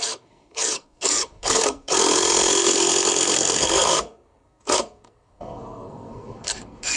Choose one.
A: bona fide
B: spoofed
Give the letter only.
B